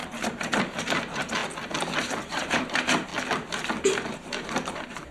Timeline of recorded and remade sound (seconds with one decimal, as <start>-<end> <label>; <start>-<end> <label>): 0.0-1.4 remade; 1.4-2.3 recorded; 2.3-3.1 remade; 3.1-4.1 recorded; 4.1-5.1 remade